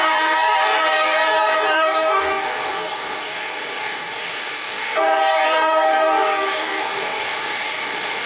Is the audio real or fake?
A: fake